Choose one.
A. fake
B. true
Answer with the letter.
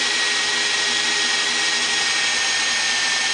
B